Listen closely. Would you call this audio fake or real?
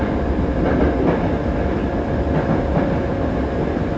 real